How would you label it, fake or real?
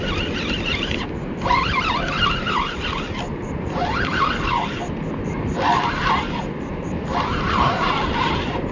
real